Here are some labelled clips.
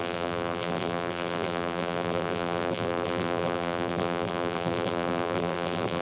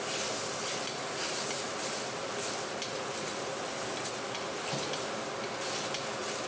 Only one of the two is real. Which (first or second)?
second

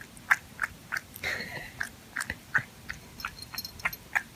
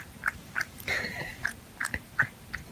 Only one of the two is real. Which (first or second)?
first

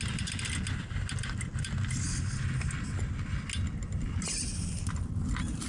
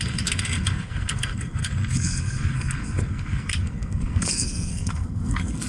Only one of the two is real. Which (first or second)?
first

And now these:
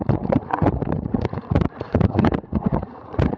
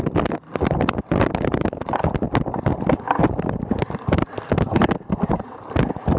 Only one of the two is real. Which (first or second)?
second